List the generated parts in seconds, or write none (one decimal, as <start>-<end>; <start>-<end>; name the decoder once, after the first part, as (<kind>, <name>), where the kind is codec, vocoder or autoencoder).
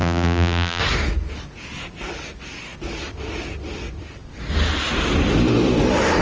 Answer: 0.0-0.8 (vocoder, BigVGAN v2)